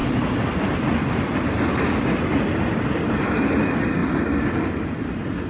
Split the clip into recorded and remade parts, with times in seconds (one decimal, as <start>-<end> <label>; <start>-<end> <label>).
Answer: 0.0-5.5 recorded